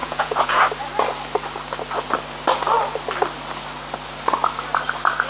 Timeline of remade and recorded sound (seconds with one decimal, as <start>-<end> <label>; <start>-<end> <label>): 0.0-0.6 remade; 0.6-5.3 recorded